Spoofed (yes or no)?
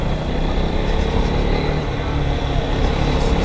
no